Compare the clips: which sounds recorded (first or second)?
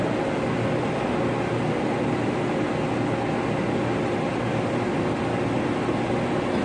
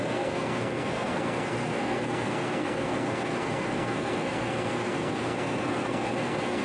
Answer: first